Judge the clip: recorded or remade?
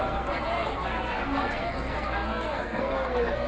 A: remade